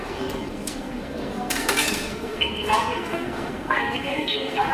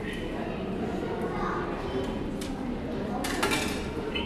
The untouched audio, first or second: second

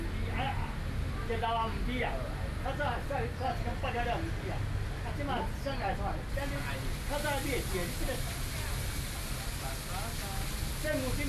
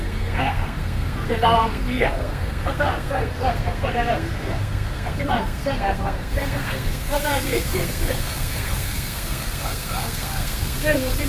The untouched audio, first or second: first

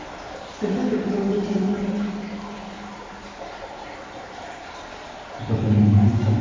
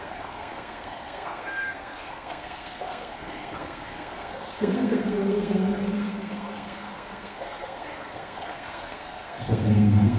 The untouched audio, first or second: first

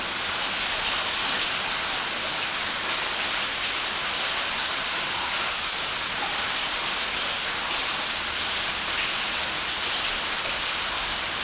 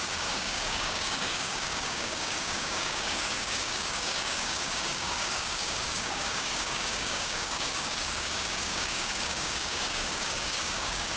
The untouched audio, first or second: first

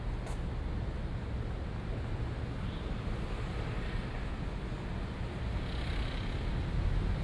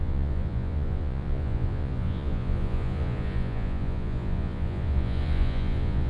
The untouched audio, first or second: first